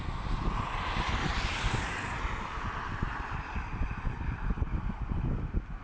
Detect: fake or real real